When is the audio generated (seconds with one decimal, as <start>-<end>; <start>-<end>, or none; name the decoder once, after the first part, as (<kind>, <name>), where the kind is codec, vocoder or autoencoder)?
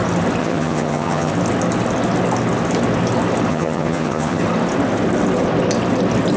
0.4-1.3 (vocoder, HiFi-GAN); 3.5-4.4